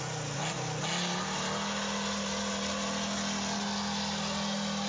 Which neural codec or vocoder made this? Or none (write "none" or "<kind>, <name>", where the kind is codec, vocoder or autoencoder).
none